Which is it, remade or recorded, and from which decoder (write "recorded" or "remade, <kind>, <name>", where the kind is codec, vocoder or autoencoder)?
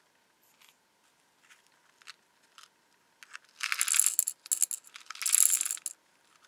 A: recorded